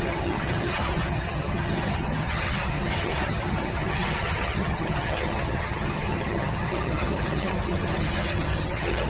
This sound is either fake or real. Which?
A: fake